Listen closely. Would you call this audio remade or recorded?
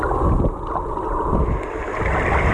recorded